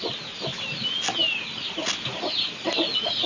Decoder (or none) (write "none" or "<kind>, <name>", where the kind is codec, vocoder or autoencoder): none